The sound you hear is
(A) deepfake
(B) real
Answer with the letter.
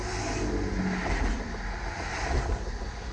B